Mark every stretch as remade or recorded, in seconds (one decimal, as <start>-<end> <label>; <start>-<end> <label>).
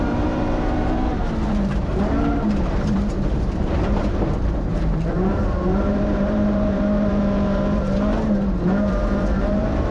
0.0-9.9 remade